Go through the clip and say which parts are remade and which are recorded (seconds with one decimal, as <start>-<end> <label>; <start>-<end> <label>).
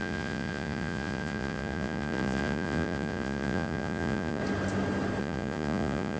0.0-4.4 remade; 4.4-5.2 recorded; 5.2-6.2 remade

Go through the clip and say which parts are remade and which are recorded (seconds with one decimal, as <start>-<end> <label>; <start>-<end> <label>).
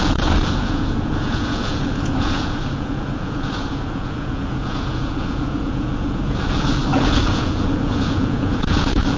0.0-9.2 remade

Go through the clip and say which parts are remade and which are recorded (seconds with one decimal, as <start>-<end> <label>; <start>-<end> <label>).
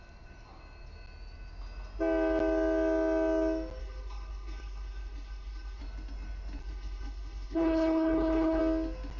0.0-3.8 recorded; 3.8-5.8 remade; 5.8-6.6 recorded; 6.6-8.6 remade; 8.6-9.2 recorded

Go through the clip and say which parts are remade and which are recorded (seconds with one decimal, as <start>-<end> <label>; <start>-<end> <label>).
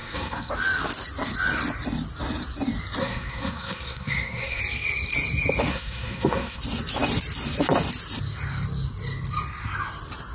0.0-0.5 remade; 0.5-3.0 recorded; 3.0-4.6 remade; 4.6-5.7 recorded; 5.7-6.6 remade; 6.6-10.3 recorded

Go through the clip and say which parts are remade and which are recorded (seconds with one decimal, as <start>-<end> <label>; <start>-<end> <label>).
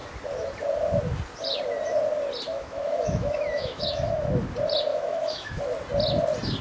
0.0-2.5 recorded; 2.5-4.4 remade; 4.4-4.9 recorded; 4.9-5.6 remade; 5.6-6.6 recorded